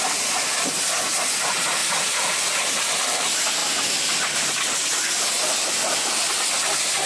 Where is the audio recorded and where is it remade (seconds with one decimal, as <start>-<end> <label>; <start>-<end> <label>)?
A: 0.0-7.1 recorded